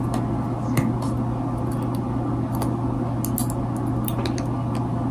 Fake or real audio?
real